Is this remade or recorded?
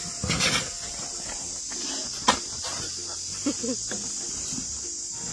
recorded